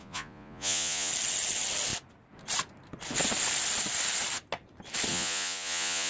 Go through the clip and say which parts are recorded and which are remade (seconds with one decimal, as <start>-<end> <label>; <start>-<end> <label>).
0.0-1.1 remade; 1.1-5.1 recorded; 5.1-6.1 remade